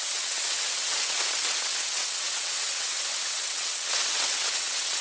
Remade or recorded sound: remade